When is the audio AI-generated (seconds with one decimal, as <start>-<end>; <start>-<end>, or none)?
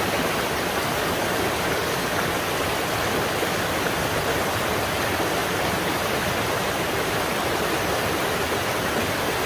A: 5.4-7.1